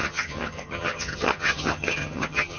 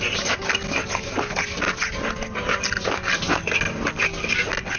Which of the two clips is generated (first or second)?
first